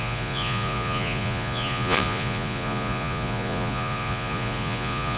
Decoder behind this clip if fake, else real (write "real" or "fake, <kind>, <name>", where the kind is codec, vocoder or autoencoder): fake, vocoder, Vocos